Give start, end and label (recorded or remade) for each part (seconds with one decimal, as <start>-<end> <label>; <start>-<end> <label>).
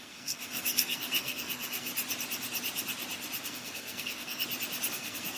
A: 0.0-1.9 remade; 1.9-3.4 recorded; 3.4-4.4 remade; 4.4-4.9 recorded; 4.9-5.4 remade